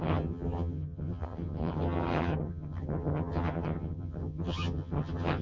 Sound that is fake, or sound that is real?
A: fake